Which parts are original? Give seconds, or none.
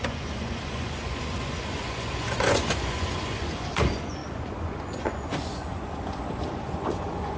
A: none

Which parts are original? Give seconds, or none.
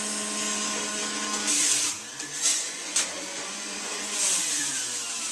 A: 0.0-2.5; 4.6-5.3